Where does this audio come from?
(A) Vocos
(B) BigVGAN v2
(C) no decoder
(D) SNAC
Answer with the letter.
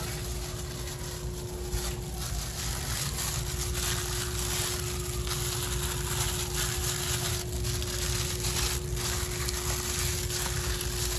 C